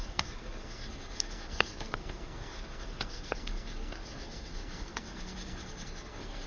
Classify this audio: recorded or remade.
remade